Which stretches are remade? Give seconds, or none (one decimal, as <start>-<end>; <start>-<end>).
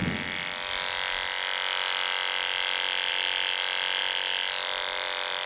4.0-5.5